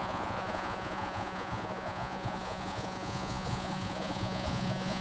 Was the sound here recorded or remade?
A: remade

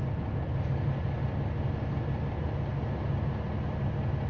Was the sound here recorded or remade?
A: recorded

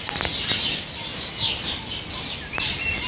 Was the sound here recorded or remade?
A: recorded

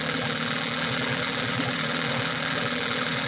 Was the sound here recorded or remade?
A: remade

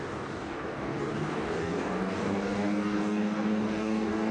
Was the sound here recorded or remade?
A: remade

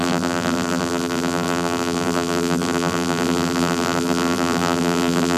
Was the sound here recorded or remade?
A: remade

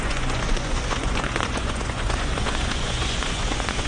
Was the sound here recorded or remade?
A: remade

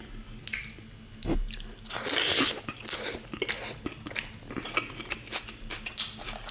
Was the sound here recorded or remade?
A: recorded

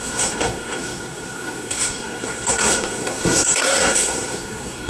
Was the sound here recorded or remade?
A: remade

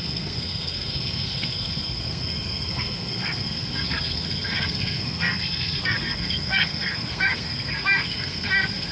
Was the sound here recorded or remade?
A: remade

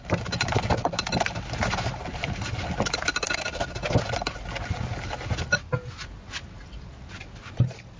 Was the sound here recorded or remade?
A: recorded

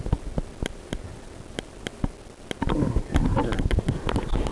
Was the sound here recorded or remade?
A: recorded